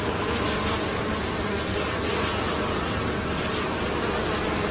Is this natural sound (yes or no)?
yes